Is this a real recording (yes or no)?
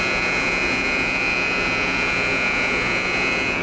no